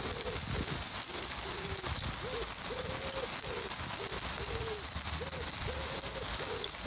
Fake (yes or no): no